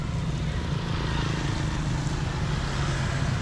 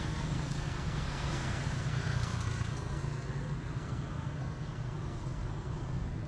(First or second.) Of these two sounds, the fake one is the second